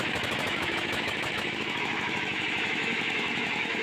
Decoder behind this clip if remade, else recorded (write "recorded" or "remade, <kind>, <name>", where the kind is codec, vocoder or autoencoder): remade, autoencoder, DAC-VAE